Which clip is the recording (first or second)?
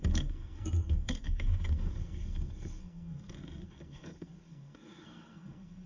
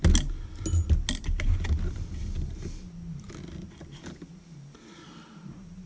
second